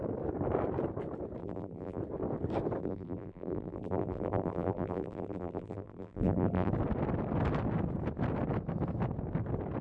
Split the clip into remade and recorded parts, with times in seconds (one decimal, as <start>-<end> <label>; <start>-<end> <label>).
0.0-1.4 recorded; 1.4-2.0 remade; 2.0-2.8 recorded; 2.8-6.7 remade; 6.7-9.8 recorded